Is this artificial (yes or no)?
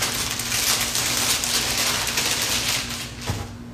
no